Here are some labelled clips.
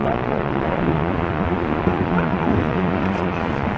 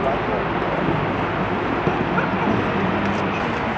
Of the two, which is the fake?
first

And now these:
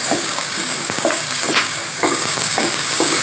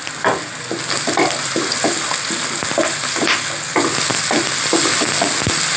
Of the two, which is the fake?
first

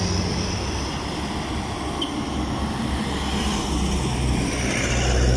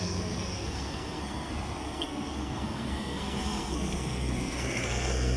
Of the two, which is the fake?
second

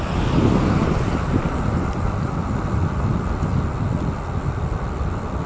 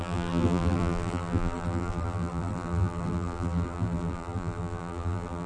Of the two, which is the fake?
second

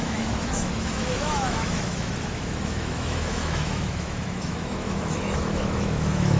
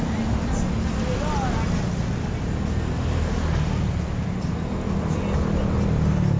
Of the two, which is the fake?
first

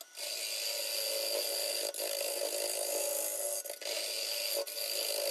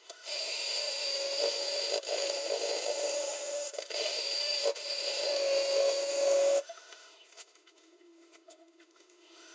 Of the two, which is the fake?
second